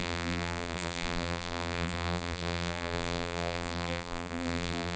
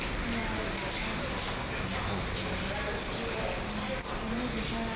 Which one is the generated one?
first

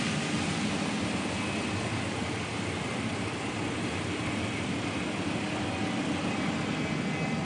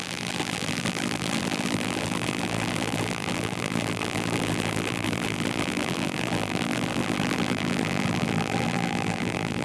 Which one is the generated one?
second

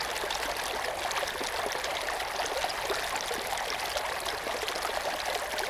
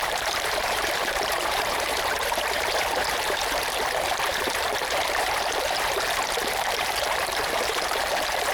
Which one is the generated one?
second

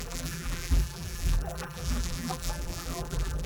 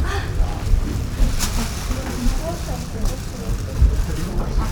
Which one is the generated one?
first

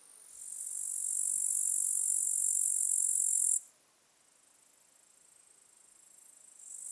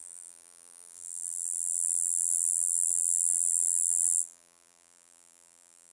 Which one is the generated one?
second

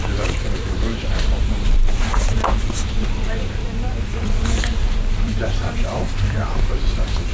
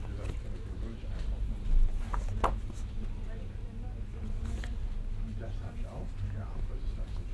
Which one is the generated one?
first